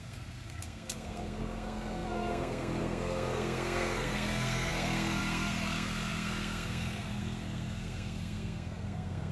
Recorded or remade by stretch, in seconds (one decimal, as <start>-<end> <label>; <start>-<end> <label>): 0.0-9.3 remade